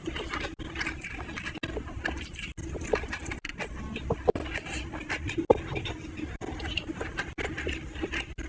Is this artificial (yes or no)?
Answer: no